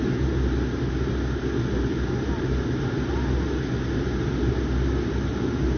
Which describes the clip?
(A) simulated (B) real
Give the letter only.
B